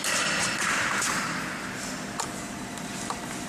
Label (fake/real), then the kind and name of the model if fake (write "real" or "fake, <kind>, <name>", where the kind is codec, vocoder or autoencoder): real